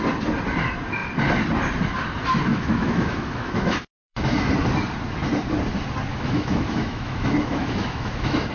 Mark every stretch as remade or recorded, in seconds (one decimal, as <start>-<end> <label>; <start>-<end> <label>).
0.0-2.5 recorded; 2.5-4.5 remade; 4.5-6.1 recorded; 6.1-8.5 remade